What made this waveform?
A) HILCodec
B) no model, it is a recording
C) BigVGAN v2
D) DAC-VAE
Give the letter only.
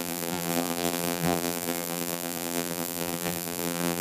C